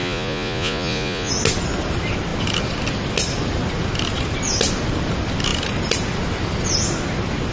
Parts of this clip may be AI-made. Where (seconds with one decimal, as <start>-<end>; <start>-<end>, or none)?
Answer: 0.0-1.3